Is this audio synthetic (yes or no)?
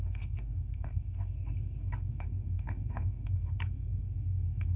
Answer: yes